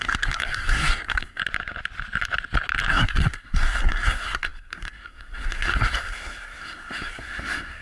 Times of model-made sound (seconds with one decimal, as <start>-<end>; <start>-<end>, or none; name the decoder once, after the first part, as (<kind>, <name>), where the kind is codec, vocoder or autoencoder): 0.0-1.4 (codec, SNAC); 2.9-7.8